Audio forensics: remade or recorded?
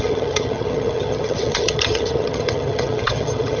remade